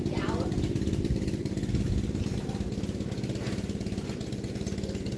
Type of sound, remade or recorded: recorded